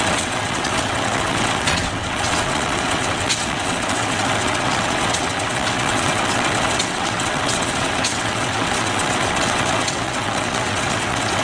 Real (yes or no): no